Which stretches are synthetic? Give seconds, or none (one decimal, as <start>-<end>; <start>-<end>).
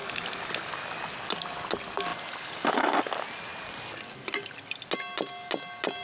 none